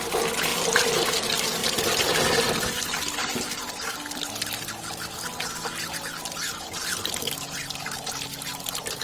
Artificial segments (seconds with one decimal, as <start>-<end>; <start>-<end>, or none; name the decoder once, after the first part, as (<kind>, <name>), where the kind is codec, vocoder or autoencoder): 3.2-4.7 (vocoder, BigVGAN v2)